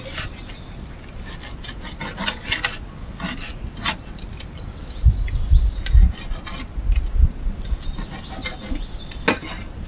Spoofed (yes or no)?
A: no